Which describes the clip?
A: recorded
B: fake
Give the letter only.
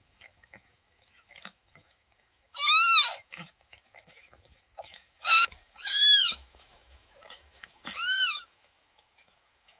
B